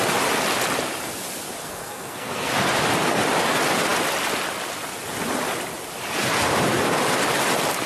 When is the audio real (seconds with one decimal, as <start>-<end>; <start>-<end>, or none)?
0.0-1.6; 2.5-7.9